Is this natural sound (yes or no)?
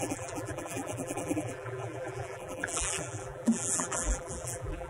no